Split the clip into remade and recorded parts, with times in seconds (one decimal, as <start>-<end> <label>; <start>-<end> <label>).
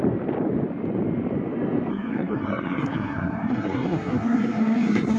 0.0-1.9 recorded; 1.9-5.2 remade